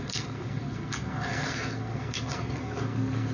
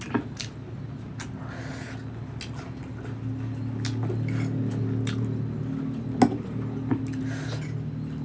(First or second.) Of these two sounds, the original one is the second